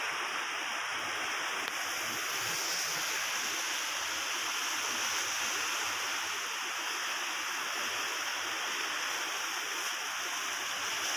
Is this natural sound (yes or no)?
yes